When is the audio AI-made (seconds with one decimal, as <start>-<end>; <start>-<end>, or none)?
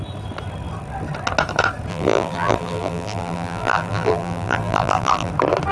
1.9-5.3